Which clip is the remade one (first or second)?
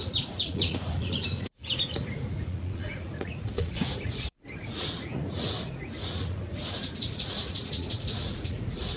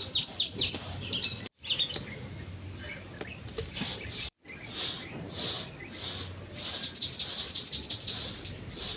first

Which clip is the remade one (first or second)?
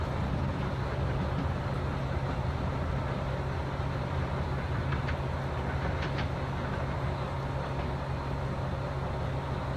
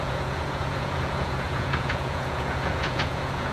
second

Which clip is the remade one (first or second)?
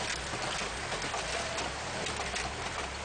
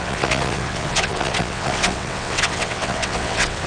second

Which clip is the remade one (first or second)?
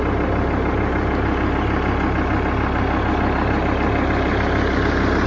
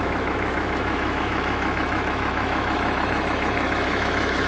second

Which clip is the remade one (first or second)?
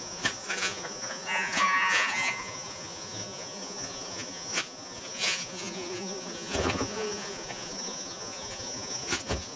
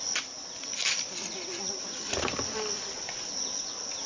first